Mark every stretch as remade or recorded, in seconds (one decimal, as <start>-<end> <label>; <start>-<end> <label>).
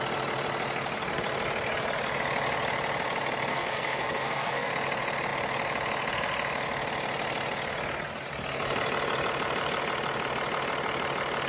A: 0.0-3.5 recorded; 3.5-4.7 remade; 4.7-11.5 recorded